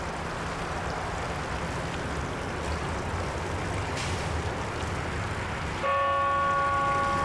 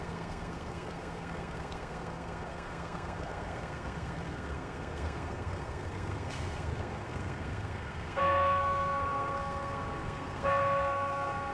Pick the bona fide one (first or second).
first